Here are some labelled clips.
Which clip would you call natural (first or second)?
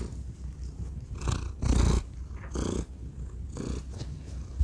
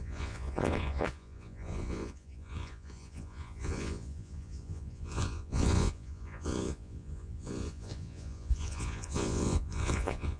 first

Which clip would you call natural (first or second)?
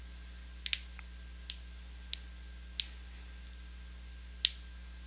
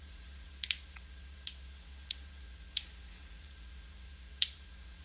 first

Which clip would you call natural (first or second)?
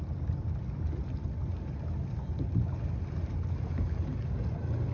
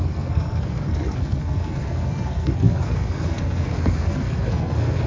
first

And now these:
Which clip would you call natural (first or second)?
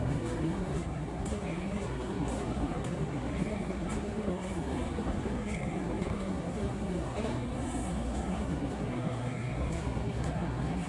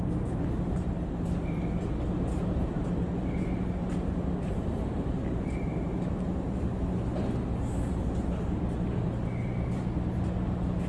second